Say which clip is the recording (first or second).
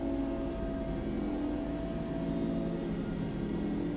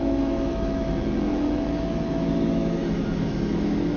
first